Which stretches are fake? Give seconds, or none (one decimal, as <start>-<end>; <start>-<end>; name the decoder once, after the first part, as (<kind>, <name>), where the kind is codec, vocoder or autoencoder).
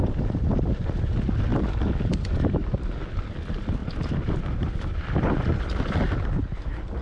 1.5-3.2 (vocoder, BigVGAN v2); 3.8-6.2